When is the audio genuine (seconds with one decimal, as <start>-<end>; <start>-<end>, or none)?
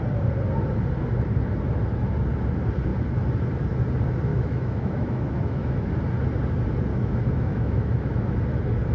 0.0-4.3; 5.9-6.9; 8.3-8.9